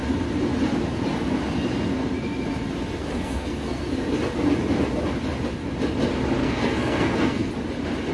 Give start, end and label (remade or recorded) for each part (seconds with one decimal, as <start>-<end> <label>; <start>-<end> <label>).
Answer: 0.0-3.0 recorded; 3.0-3.8 remade; 3.8-6.4 recorded; 6.4-7.5 remade; 7.5-8.1 recorded